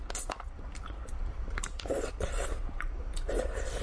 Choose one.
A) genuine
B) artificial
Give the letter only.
B